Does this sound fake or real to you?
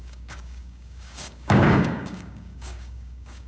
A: fake